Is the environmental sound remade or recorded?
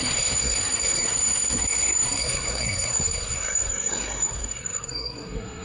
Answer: remade